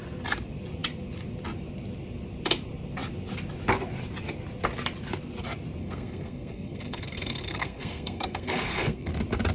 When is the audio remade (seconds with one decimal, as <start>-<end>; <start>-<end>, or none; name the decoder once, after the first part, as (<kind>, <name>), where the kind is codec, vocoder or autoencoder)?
5.8-9.1 (codec, SNAC)